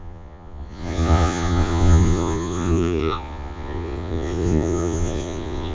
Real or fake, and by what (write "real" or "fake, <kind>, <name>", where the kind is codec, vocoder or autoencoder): fake, vocoder, Vocos